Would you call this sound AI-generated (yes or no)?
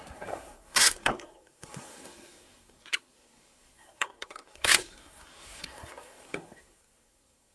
yes